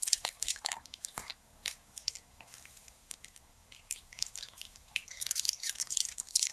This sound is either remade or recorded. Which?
remade